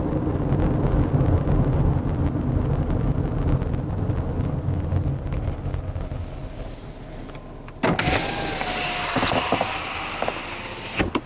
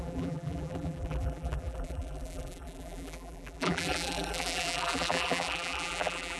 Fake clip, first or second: second